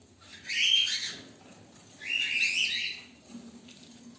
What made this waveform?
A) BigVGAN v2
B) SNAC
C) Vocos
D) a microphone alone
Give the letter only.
D